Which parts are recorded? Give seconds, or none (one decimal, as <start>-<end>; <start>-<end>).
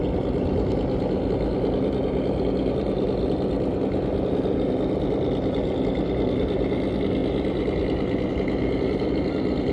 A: 0.0-9.7